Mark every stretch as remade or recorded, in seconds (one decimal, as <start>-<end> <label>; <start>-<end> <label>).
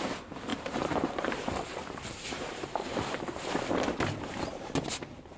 0.0-0.5 recorded; 0.5-3.7 remade; 3.7-5.4 recorded